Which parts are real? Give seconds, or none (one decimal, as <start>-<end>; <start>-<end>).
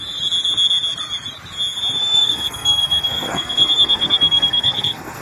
0.0-2.0